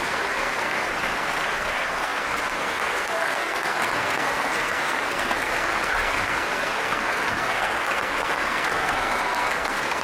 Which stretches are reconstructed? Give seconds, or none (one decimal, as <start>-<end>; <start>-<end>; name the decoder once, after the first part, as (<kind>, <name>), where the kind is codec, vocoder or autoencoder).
0.0-10.0 (codec, SNAC)